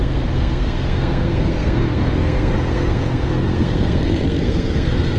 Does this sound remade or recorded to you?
remade